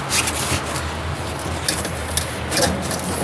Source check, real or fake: real